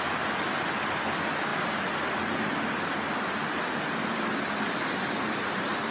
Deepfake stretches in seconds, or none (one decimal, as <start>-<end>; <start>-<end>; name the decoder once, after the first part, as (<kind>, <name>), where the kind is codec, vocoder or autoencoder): none